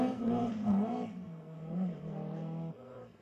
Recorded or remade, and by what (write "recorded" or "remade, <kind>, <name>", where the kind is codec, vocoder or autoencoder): remade, codec, SNAC